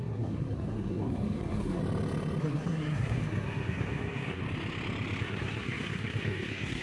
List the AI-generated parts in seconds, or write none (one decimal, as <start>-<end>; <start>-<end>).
0.0-1.8; 2.4-4.4; 5.2-6.8